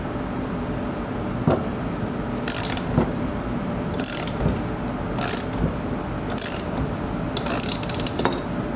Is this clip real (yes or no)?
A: yes